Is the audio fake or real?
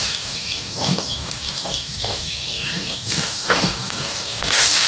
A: fake